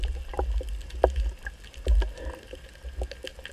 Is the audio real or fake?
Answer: real